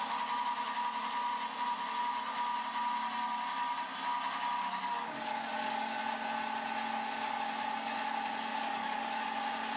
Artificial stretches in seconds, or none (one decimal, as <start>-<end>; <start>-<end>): 4.6-6.0; 8.5-9.2